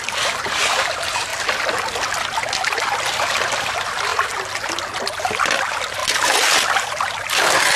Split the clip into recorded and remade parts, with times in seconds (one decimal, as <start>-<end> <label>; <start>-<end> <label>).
0.0-7.8 recorded